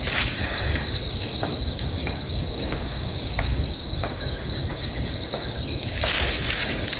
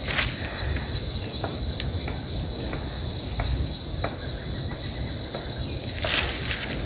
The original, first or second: second